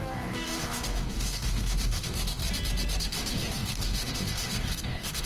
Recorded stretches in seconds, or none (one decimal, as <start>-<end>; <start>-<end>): 2.4-3.0

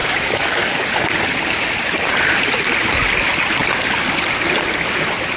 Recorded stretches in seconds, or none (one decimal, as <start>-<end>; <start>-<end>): 0.9-5.4